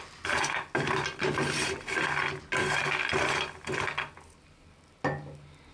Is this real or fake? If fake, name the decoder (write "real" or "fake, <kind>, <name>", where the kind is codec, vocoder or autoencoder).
real